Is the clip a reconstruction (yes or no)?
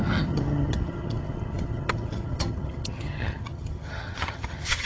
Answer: yes